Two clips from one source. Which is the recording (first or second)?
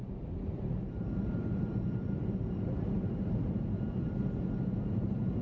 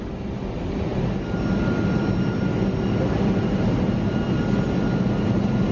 second